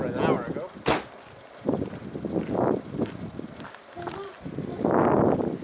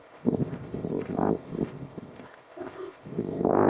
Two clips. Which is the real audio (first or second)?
first